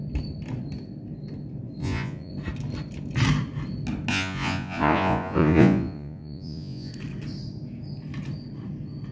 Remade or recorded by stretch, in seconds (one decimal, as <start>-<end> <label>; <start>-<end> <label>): 0.0-1.8 recorded; 1.8-2.3 remade; 2.3-4.1 recorded; 4.1-6.9 remade; 6.9-9.1 recorded

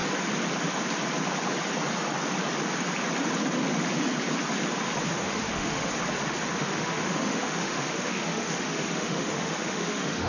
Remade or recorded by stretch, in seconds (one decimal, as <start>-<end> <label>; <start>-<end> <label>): 0.0-5.1 recorded; 5.1-5.9 remade; 5.9-6.6 recorded; 6.6-10.3 remade